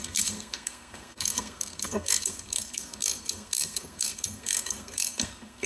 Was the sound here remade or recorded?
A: remade